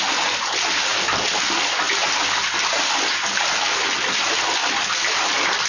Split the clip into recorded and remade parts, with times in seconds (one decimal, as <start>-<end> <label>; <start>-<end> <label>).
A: 0.0-5.7 recorded